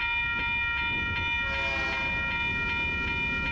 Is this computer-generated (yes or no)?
no